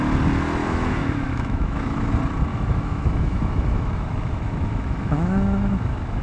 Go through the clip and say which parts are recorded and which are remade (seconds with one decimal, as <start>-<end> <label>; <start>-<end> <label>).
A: 0.0-0.6 recorded; 0.6-2.1 remade; 2.1-2.5 recorded; 2.5-6.2 remade